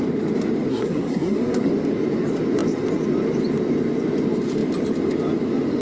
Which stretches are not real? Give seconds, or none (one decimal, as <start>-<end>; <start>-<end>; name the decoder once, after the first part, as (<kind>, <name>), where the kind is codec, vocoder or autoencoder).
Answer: 0.7-1.7 (codec, SNAC)